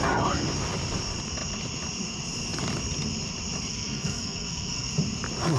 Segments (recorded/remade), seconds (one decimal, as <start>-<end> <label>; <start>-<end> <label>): 0.0-3.7 recorded; 3.7-4.9 remade; 4.9-5.6 recorded